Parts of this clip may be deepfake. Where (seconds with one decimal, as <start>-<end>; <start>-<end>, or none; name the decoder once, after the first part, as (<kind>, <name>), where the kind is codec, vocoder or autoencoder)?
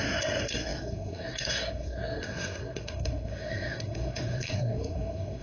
0.0-5.4 (codec, SNAC)